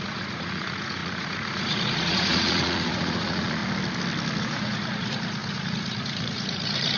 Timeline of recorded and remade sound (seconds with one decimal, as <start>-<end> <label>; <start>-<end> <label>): 0.0-3.6 remade; 3.6-4.4 recorded; 4.4-7.0 remade